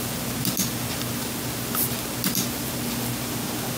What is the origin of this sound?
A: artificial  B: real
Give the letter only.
B